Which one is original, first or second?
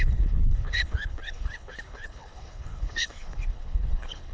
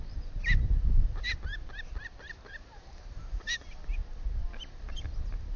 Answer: second